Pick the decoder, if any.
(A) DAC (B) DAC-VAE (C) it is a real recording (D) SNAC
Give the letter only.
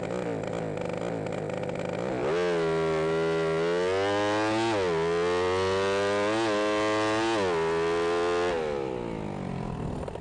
C